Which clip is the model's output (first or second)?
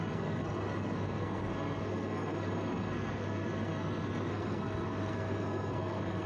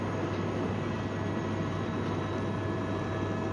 first